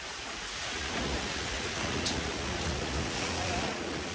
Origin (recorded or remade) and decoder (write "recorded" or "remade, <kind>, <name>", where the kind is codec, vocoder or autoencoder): remade, vocoder, Vocos